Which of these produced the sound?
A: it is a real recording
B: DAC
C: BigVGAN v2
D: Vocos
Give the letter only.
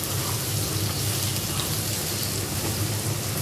A